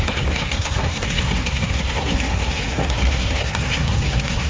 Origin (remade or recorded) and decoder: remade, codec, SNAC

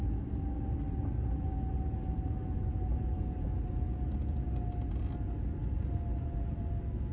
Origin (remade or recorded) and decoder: recorded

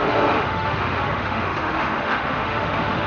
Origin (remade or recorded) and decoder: remade, autoencoder, DAC-VAE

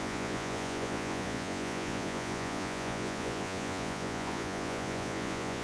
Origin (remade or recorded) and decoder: remade, vocoder, Vocos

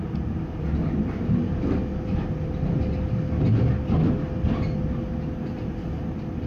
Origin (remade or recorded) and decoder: recorded